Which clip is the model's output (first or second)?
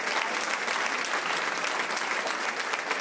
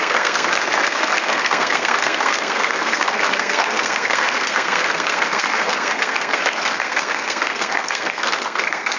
second